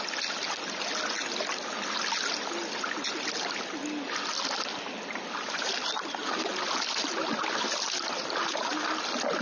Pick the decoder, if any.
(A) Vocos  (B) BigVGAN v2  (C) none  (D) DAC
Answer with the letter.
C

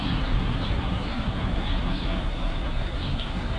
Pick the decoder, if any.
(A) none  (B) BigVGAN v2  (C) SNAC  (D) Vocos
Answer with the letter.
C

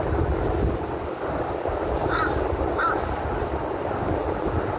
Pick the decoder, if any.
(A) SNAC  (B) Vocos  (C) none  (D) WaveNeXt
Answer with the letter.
C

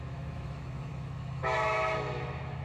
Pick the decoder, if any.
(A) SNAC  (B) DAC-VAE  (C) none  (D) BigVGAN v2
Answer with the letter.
B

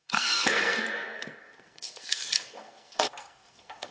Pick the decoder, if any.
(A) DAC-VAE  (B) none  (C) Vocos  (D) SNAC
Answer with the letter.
D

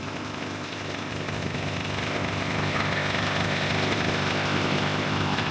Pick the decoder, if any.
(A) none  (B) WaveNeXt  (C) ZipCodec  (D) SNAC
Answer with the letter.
C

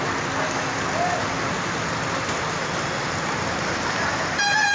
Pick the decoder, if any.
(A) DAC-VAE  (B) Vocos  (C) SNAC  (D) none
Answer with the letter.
D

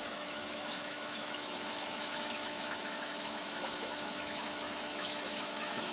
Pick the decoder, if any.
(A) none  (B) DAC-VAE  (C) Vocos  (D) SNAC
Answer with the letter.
B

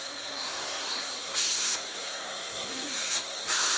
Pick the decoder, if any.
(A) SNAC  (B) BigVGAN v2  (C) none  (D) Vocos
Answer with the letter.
A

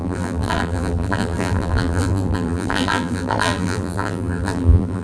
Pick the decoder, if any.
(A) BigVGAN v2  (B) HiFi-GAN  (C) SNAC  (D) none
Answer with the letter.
A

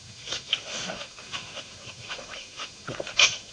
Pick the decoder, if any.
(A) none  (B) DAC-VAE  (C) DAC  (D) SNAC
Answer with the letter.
B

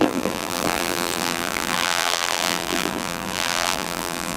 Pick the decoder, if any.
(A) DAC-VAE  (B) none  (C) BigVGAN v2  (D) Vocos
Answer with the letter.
C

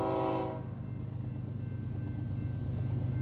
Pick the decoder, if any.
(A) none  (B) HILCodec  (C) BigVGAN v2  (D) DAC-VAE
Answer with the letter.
A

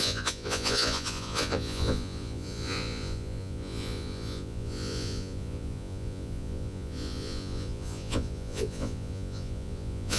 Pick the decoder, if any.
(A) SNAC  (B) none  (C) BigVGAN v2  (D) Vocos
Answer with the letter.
D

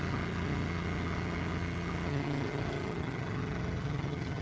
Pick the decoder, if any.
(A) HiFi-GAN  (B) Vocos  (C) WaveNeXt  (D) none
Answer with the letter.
A